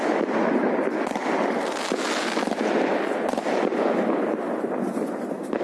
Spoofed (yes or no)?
no